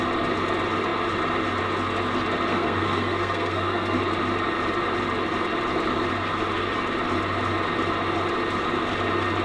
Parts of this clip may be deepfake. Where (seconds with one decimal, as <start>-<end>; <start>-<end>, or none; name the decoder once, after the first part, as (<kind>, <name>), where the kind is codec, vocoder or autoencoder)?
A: 2.5-4.0 (codec, SNAC)